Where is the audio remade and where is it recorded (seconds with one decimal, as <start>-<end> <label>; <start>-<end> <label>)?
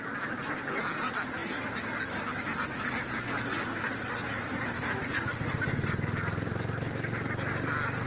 0.0-8.1 recorded